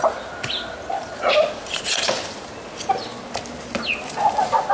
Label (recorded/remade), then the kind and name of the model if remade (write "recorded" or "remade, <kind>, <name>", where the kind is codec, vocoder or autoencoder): recorded